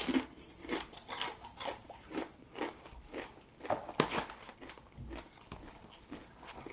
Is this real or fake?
real